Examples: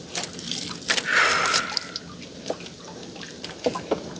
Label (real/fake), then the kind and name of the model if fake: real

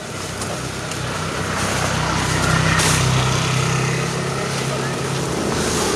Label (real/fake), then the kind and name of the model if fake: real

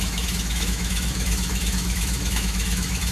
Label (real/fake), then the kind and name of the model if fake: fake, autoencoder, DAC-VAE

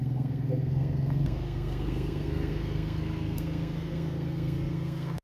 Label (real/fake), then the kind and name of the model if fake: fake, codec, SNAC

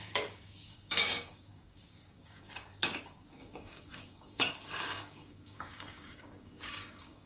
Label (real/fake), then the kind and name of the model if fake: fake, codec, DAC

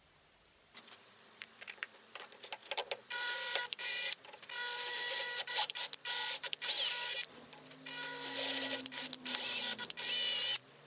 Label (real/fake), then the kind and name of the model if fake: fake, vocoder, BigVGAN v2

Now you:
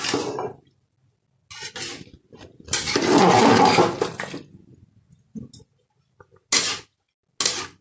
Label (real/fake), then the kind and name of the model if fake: real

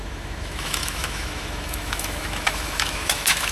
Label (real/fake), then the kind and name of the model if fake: fake, autoencoder, DAC-VAE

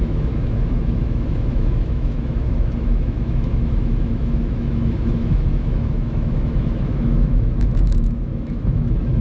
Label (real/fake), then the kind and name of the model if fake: fake, autoencoder, DAC-VAE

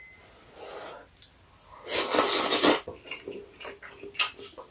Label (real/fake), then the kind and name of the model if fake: real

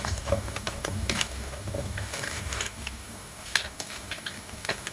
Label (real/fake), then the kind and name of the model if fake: fake, codec, DAC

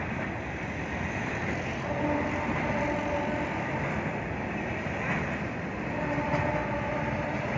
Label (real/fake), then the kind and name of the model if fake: real